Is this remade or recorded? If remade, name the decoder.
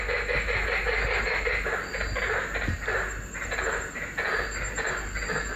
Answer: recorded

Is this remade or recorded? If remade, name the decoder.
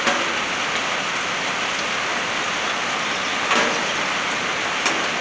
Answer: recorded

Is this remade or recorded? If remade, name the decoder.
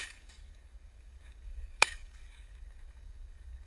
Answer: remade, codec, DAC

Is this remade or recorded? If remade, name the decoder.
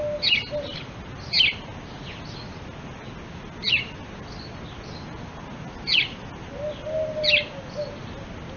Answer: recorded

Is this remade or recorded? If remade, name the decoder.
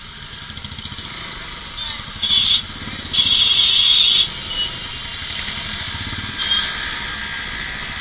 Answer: recorded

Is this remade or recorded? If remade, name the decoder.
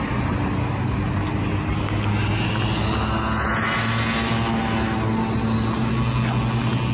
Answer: recorded